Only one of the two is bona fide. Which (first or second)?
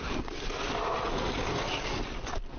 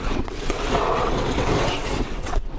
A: first